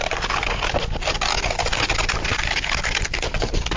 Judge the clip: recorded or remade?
recorded